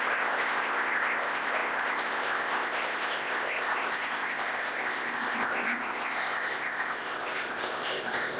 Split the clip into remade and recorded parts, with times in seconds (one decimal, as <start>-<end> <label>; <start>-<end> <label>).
0.0-8.4 remade